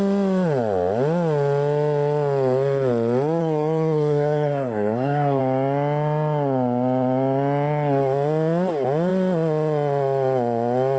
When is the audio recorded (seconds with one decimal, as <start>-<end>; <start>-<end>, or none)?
0.0-3.4; 5.4-11.0